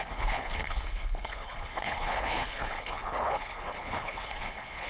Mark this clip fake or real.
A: fake